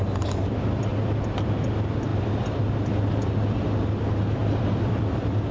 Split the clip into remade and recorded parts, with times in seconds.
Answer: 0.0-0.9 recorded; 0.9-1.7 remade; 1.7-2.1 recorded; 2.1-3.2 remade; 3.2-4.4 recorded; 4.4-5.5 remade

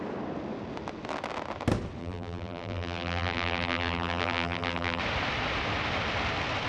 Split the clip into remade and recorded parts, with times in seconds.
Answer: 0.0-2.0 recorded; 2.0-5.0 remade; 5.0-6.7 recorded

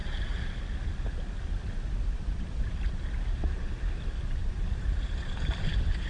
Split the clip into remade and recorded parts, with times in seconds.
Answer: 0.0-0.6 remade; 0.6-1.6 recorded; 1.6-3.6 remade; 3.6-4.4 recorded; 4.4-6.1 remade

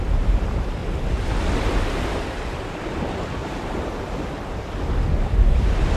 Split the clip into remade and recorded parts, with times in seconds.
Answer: 0.0-0.8 remade; 0.8-1.6 recorded; 1.6-6.0 remade

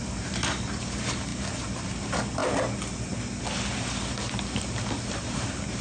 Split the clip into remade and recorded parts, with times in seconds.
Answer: 0.0-2.4 remade; 2.4-4.6 recorded; 4.6-5.8 remade